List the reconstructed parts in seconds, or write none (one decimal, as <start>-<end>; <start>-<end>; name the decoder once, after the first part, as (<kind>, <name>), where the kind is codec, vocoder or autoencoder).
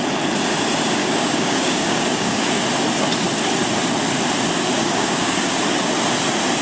1.0-2.6 (codec, DAC); 4.8-5.9